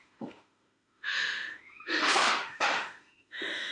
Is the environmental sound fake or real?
fake